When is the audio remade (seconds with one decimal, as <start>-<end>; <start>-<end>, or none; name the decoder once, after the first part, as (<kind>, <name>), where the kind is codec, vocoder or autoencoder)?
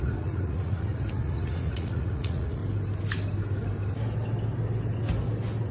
0.0-2.6 (vocoder, Vocos)